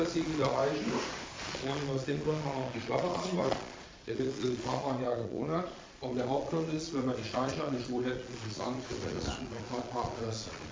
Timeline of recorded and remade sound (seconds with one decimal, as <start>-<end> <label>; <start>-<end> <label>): 0.0-0.6 remade; 0.6-1.4 recorded; 1.4-10.7 remade